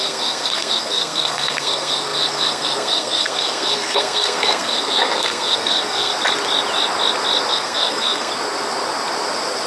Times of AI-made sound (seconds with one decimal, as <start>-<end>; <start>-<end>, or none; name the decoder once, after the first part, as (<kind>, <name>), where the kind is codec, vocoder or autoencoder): 0.0-6.1 (codec, SNAC); 7.5-8.3